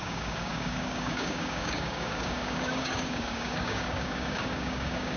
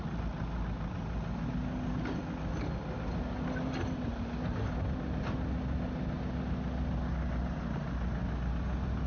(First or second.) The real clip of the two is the second